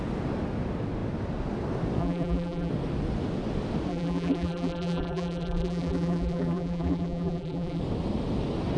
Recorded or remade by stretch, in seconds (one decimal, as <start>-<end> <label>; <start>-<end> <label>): 0.0-2.0 recorded; 2.0-2.7 remade; 2.7-3.9 recorded; 3.9-7.8 remade; 7.8-8.8 recorded